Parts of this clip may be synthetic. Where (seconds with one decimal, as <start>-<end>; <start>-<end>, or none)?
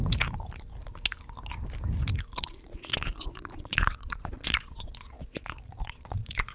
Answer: 2.4-6.5